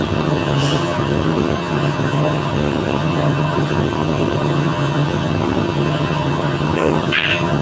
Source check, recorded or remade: remade